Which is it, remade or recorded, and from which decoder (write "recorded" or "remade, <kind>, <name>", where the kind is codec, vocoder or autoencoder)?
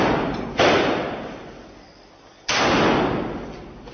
recorded